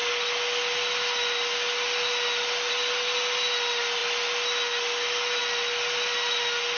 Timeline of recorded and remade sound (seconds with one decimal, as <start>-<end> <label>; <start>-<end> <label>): 0.0-6.8 recorded